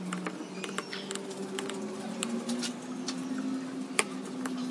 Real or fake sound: real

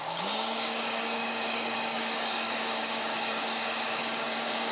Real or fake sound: fake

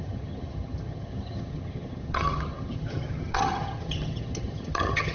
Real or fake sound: fake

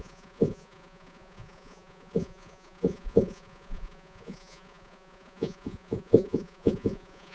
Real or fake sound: fake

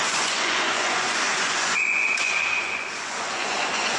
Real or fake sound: fake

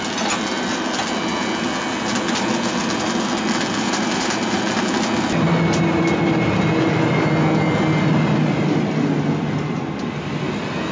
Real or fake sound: real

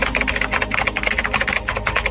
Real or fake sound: real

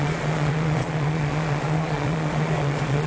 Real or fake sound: fake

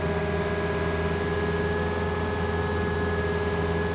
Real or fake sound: real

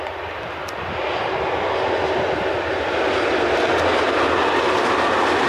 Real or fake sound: real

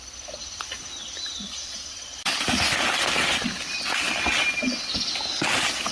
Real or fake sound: real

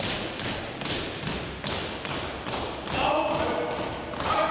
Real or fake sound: real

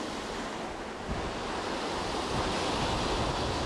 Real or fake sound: real